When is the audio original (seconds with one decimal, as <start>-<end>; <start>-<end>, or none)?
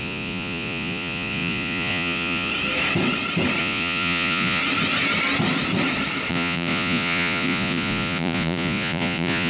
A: 2.5-3.6; 4.6-6.3